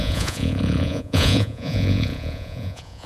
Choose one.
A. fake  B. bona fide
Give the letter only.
A